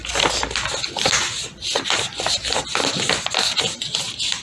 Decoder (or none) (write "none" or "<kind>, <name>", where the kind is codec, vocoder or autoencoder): none